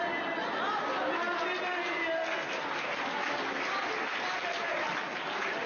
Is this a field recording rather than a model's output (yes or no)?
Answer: yes